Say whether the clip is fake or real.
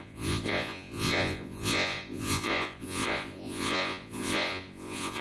fake